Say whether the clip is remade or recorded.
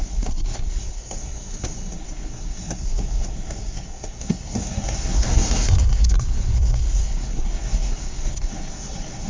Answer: remade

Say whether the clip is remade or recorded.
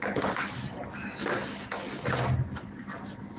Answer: recorded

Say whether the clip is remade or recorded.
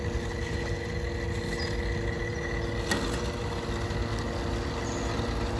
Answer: recorded